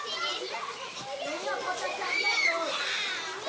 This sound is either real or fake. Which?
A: real